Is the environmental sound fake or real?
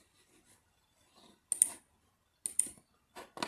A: real